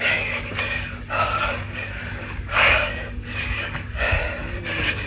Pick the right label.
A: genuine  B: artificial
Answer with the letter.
B